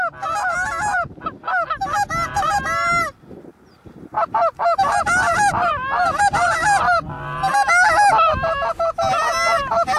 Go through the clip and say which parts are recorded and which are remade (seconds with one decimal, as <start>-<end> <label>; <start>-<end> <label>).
0.0-0.9 recorded; 0.9-1.4 remade; 1.4-2.3 recorded; 2.3-7.5 remade; 7.5-10.0 recorded